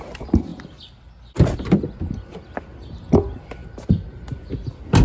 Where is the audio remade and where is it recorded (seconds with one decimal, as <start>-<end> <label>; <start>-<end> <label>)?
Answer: 0.0-3.6 recorded; 3.6-4.4 remade; 4.4-5.0 recorded